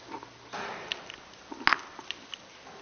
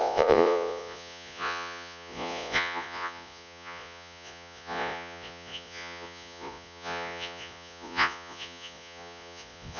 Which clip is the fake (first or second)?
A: second